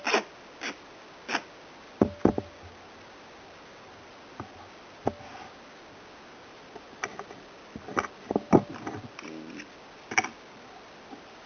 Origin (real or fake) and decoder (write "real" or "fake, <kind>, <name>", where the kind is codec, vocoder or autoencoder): real